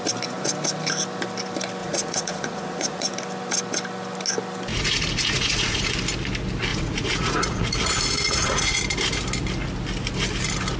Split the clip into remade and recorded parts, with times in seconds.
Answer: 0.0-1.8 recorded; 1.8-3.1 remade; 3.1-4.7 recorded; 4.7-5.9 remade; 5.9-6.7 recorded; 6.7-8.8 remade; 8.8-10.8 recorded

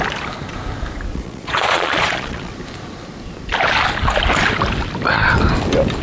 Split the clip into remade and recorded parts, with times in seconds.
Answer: 0.0-1.1 recorded; 1.1-2.5 remade; 2.5-6.0 recorded

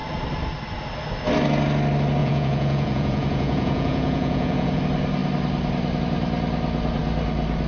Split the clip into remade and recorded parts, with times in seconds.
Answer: 0.0-2.2 recorded; 2.2-4.8 remade; 4.8-7.7 recorded

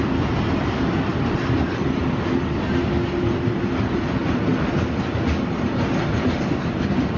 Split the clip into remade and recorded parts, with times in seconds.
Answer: 0.0-7.2 recorded

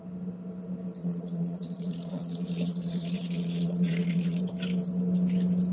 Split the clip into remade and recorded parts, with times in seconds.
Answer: 0.0-1.0 recorded; 1.0-4.4 remade; 4.4-5.7 recorded

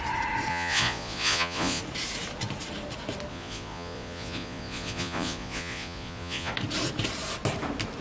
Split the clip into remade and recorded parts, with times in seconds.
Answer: 0.0-0.5 recorded; 0.5-1.8 remade; 1.8-3.3 recorded; 3.3-6.5 remade; 6.5-8.0 recorded

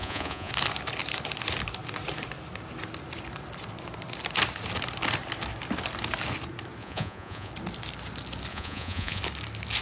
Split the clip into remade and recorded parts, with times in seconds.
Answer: 0.0-0.5 remade; 0.5-6.8 recorded; 6.8-7.5 remade; 7.5-8.5 recorded; 8.5-9.2 remade; 9.2-9.8 recorded

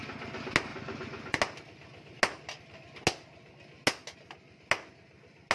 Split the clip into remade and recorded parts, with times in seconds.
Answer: 0.0-0.7 recorded; 0.7-1.4 remade; 1.4-5.5 recorded